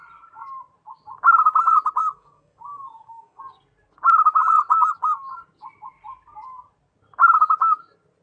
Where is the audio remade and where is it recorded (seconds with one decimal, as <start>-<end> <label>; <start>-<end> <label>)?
0.0-2.0 recorded; 2.0-3.4 remade; 3.4-8.2 recorded